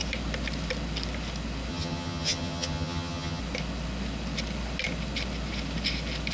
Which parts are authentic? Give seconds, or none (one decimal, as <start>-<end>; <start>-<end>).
0.0-1.7; 3.4-6.3